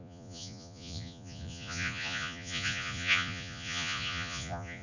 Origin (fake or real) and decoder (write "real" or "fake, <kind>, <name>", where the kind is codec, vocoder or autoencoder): fake, vocoder, Vocos